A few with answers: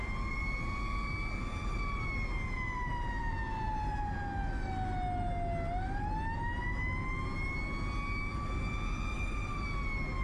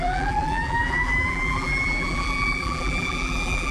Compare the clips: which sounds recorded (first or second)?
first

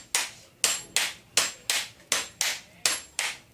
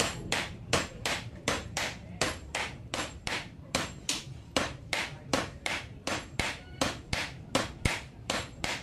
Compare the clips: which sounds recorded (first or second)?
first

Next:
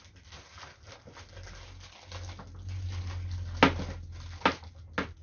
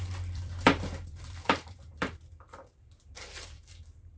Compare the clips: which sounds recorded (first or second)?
first